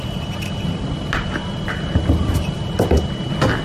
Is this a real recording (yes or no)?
yes